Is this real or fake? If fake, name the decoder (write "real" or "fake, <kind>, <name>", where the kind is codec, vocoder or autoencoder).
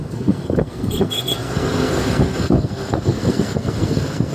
fake, codec, SNAC